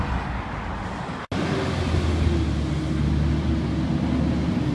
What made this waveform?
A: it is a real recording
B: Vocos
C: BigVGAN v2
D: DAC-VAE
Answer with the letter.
A